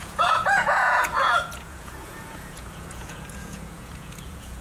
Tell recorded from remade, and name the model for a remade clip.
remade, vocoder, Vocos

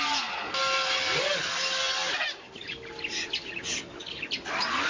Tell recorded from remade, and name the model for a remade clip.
recorded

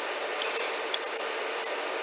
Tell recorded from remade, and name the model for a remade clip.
recorded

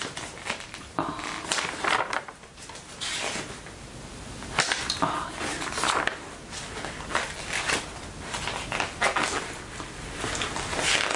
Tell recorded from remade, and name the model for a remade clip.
recorded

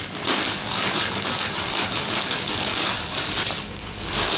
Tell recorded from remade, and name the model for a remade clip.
remade, codec, DAC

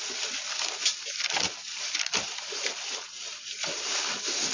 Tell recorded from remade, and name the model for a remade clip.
recorded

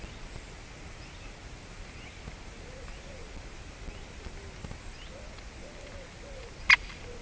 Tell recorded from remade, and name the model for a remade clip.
recorded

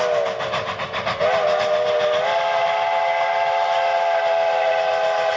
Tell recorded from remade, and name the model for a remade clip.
recorded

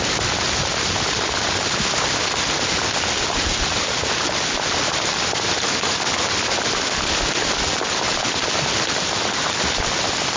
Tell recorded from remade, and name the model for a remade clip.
recorded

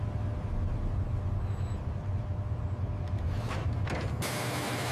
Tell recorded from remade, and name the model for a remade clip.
recorded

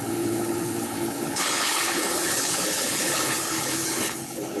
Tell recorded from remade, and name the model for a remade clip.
remade, codec, HILCodec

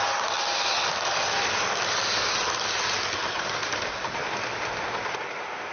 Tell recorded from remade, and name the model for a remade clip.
recorded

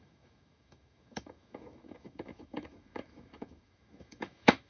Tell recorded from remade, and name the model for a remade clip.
remade, autoencoder, DAC-VAE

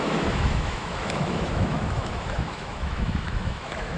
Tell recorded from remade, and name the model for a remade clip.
remade, autoencoder, DAC-VAE